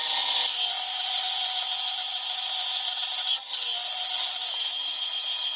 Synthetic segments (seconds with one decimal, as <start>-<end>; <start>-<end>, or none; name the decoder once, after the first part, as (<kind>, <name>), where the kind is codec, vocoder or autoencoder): none